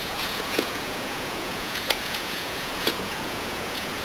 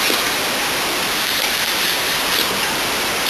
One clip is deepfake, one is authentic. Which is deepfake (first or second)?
first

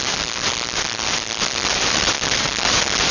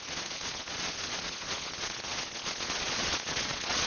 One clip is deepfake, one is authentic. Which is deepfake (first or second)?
second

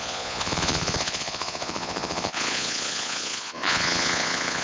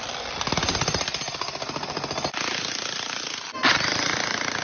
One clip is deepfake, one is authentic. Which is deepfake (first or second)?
first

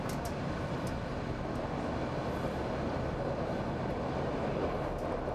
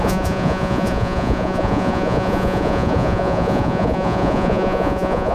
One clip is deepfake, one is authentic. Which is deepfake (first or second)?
second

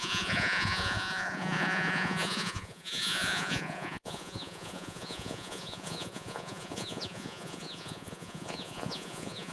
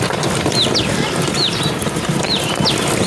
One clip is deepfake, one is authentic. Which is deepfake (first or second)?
first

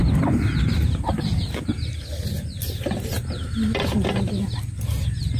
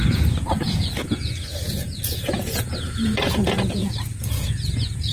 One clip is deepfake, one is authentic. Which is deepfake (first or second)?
second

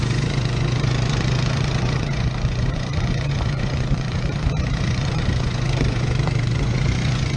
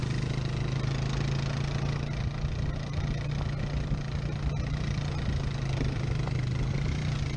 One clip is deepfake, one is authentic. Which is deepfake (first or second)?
first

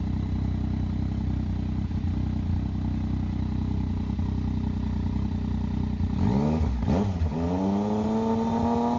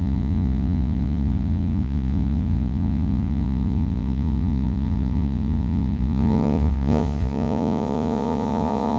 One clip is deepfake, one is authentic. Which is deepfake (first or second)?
second